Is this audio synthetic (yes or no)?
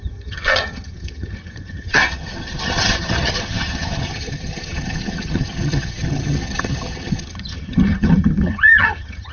yes